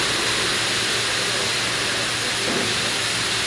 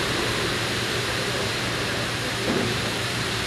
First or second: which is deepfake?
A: second